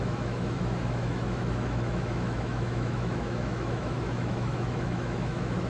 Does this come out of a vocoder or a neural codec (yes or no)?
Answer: yes